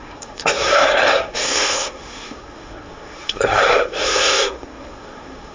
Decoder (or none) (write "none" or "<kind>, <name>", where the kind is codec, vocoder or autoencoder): codec, SNAC